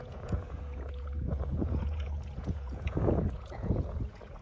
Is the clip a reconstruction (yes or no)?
yes